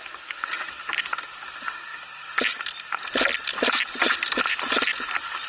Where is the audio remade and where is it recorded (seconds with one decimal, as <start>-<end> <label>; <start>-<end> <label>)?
0.0-0.5 remade; 0.5-5.5 recorded